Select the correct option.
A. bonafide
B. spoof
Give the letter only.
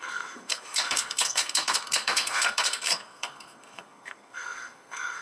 B